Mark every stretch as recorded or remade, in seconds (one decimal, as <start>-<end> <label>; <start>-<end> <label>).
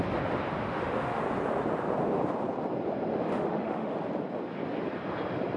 0.0-0.6 recorded; 0.6-1.2 remade; 1.2-3.1 recorded; 3.1-3.9 remade; 3.9-5.6 recorded